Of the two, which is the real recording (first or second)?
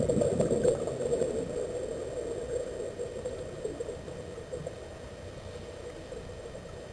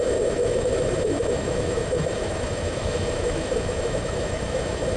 first